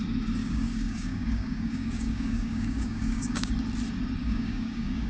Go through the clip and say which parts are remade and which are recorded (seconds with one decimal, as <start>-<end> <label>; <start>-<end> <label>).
0.0-0.4 recorded; 0.4-3.5 remade; 3.5-4.2 recorded; 4.2-5.1 remade